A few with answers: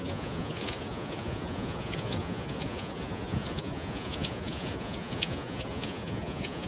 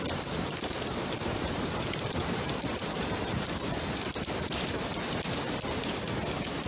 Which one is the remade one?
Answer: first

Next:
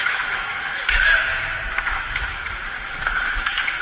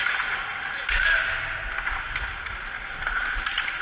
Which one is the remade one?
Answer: first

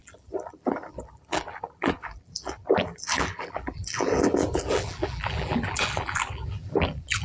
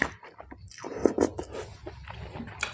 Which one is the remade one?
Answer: first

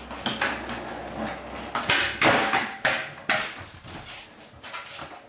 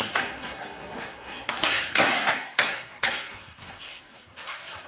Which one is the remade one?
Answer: second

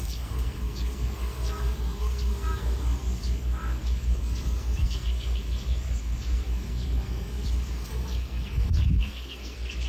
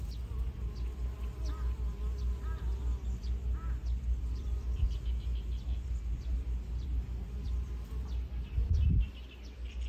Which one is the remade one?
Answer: first